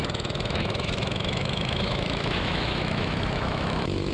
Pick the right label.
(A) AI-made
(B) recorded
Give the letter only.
A